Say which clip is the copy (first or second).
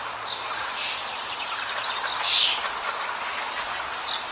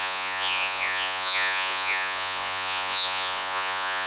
second